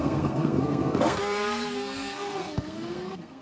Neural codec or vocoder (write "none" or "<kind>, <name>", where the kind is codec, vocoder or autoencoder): codec, SNAC